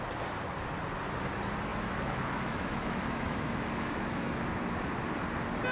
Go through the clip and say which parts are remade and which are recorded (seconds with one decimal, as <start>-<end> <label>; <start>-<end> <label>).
0.0-1.7 recorded; 1.7-4.3 remade; 4.3-5.7 recorded